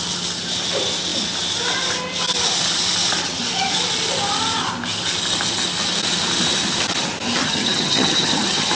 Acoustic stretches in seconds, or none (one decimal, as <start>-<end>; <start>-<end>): 0.0-7.4